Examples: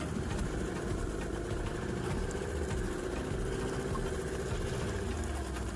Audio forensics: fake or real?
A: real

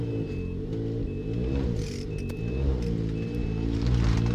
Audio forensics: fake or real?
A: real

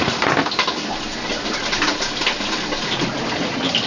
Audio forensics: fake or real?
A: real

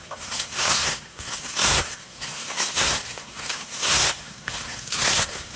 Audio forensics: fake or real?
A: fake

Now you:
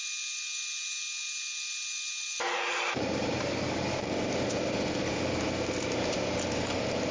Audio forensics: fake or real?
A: real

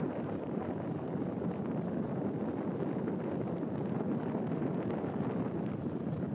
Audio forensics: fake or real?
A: real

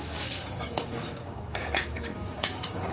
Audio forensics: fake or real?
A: fake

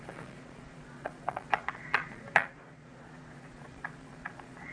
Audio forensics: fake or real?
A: fake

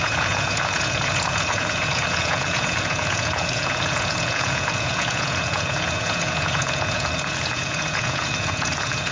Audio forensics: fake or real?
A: fake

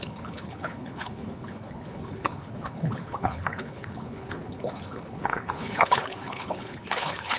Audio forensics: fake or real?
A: fake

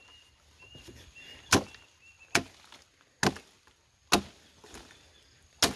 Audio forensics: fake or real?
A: real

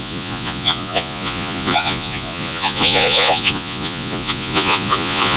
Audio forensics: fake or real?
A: fake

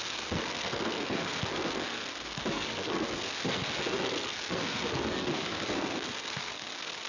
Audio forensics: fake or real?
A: fake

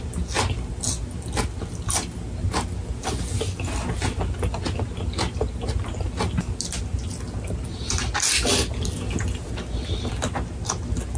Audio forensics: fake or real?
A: real